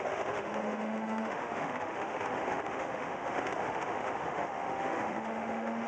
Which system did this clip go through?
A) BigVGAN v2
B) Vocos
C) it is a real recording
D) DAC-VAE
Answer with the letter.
D